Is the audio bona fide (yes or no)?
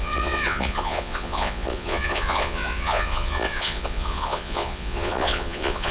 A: no